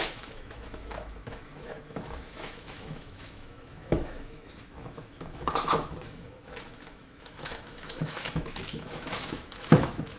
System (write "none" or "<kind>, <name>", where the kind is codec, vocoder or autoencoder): autoencoder, DAC-VAE